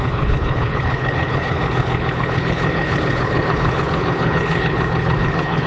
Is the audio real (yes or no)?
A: no